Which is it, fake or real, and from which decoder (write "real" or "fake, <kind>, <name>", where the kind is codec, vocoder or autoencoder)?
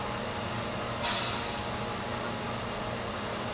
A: real